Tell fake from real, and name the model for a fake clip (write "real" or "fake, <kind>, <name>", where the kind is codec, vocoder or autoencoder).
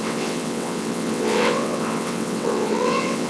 fake, vocoder, WaveNeXt